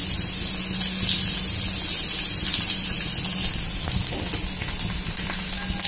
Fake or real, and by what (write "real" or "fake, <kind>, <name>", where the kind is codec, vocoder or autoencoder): real